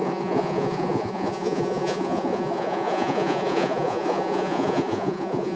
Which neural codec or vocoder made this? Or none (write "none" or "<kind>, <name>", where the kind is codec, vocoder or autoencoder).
vocoder, Vocos